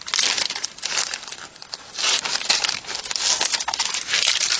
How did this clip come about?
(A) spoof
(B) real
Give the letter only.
B